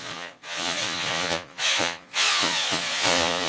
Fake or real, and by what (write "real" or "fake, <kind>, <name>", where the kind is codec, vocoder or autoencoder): fake, vocoder, Vocos